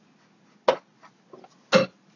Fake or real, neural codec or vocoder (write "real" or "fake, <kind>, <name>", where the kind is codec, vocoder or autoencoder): real